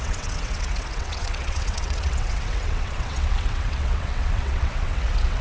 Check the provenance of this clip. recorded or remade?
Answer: remade